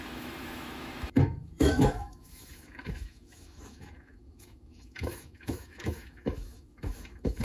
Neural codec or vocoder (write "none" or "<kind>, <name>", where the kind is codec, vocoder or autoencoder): autoencoder, DAC-VAE